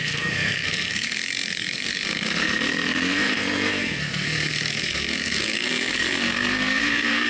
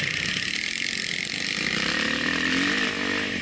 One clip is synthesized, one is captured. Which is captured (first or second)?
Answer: second